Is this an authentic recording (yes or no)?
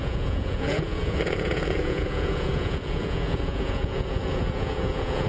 no